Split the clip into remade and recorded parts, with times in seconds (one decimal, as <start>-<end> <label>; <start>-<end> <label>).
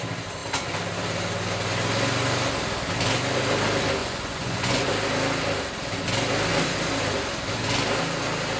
0.0-4.0 recorded; 4.0-4.9 remade; 4.9-8.6 recorded